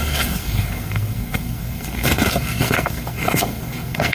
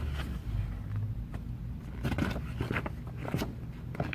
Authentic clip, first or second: second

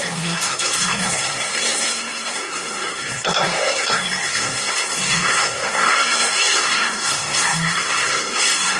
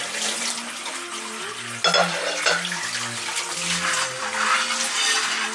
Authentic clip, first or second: second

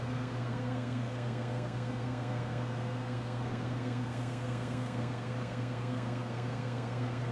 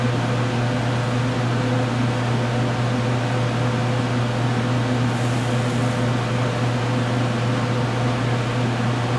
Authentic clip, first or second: second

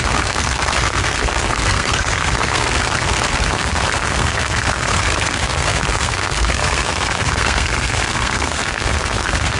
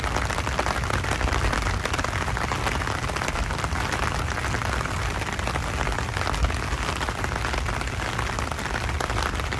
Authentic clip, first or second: second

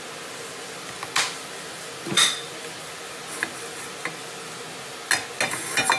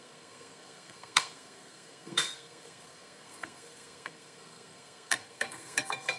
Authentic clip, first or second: first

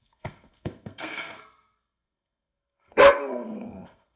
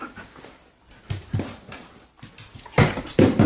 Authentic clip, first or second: second